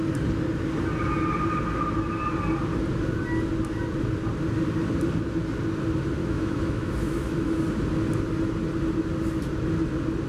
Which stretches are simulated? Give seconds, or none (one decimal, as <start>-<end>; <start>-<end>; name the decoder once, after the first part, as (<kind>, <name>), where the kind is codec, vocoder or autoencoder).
6.2-7.6 (autoencoder, DAC-VAE)

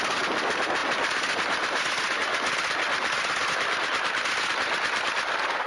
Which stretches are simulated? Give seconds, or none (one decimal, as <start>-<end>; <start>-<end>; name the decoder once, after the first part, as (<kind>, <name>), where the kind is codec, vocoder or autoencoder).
none